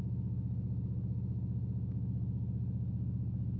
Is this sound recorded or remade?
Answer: remade